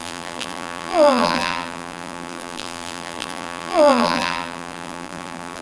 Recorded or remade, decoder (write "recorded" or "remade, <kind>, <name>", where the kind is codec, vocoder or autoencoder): remade, vocoder, BigVGAN v2